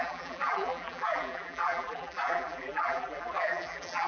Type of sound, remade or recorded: remade